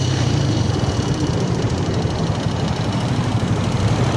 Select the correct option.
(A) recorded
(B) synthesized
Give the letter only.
B